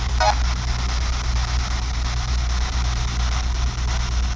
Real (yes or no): yes